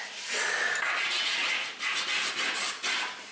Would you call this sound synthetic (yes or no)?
no